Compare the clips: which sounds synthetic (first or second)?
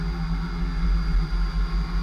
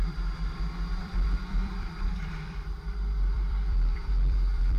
second